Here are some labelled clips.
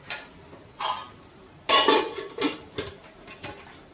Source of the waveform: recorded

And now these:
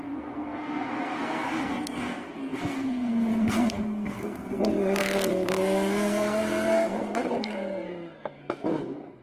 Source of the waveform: remade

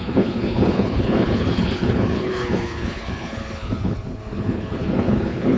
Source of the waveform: remade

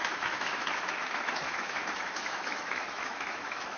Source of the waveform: remade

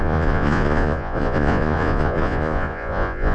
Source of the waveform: remade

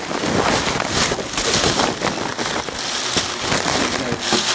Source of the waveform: recorded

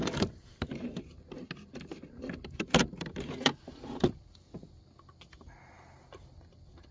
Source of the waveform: recorded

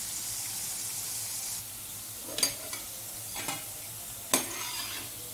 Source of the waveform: recorded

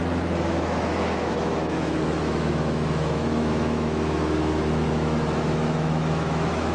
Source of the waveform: remade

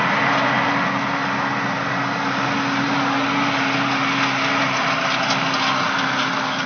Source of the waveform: recorded